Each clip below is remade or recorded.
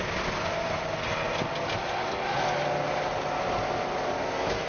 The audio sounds recorded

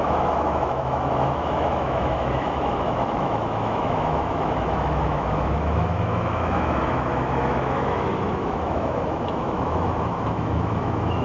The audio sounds remade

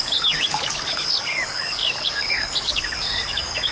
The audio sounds remade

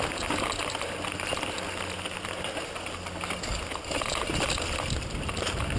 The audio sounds recorded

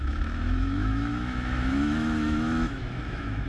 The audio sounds remade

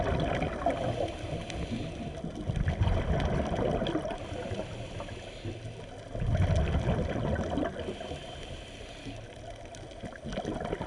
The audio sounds recorded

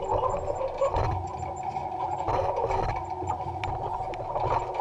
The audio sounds recorded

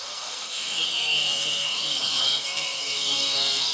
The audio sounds remade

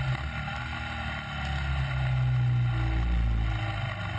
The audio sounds recorded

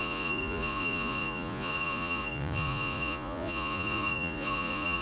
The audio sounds remade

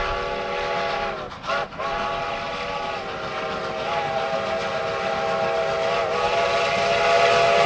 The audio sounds recorded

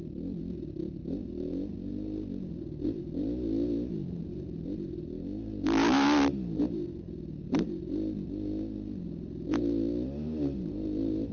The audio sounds recorded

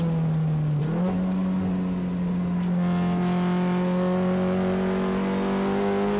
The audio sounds recorded